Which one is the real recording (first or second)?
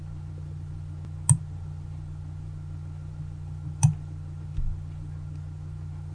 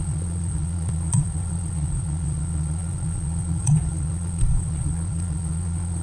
first